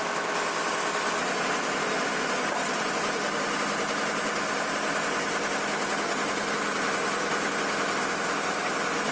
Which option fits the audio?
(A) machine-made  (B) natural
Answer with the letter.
B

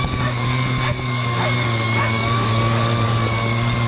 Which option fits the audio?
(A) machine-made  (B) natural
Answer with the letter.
A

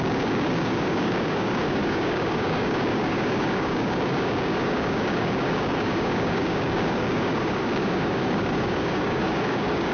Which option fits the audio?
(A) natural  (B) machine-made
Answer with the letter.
B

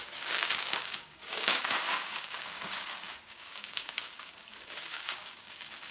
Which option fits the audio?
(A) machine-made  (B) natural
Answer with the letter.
A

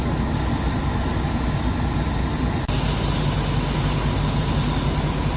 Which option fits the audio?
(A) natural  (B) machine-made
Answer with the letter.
A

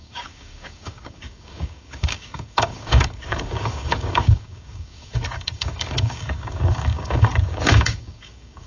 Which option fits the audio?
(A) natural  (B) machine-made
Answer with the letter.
B